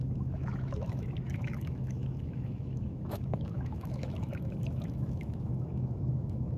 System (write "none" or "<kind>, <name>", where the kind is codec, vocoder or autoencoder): autoencoder, DAC-VAE